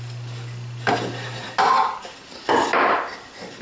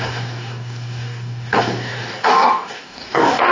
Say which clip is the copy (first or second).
second